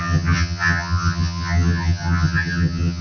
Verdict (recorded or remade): remade